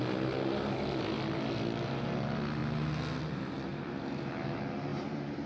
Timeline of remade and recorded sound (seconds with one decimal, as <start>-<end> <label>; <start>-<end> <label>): 0.0-3.7 recorded; 3.7-4.3 remade; 4.3-4.9 recorded; 4.9-5.5 remade